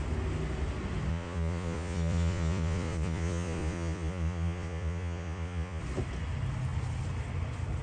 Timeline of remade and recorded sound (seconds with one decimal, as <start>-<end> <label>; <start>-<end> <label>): 0.0-1.1 recorded; 1.1-5.8 remade; 5.8-7.8 recorded